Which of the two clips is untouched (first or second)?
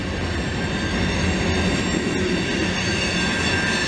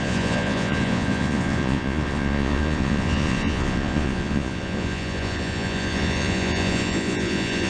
first